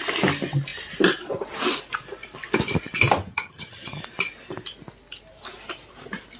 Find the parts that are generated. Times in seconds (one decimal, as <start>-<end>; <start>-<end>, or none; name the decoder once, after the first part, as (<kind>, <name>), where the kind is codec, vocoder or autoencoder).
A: 3.3-4.0 (vocoder, HiFi-GAN)